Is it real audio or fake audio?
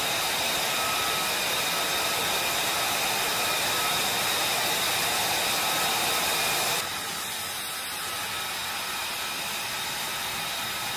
real